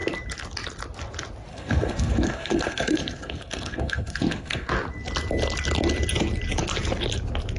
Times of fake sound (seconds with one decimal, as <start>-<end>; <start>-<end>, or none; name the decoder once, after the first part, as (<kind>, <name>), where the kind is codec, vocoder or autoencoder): 1.5-4.7 (codec, SNAC)